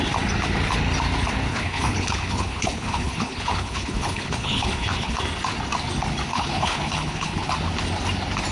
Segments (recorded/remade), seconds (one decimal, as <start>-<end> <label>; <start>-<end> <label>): 0.0-1.5 recorded; 1.5-5.2 remade; 5.2-6.3 recorded; 6.3-7.5 remade; 7.5-8.5 recorded